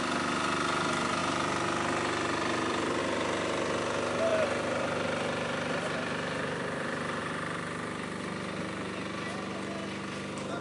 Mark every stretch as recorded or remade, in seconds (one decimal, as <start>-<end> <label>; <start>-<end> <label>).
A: 0.0-1.2 recorded; 1.2-3.0 remade; 3.0-4.3 recorded; 4.3-7.2 remade; 7.2-10.6 recorded